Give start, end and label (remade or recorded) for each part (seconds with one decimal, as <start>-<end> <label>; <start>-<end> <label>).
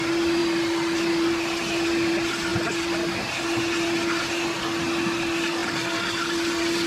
0.0-6.9 recorded